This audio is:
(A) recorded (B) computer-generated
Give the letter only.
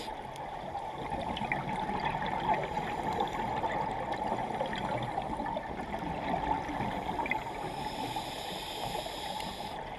A